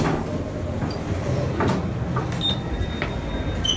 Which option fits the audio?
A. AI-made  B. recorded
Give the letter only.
B